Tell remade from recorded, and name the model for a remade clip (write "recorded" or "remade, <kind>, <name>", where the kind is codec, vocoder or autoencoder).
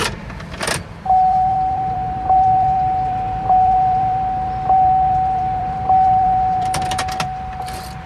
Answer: remade, vocoder, BigVGAN v2